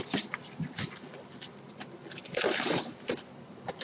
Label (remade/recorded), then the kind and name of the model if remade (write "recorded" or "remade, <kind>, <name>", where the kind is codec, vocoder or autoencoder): remade, vocoder, BigVGAN v2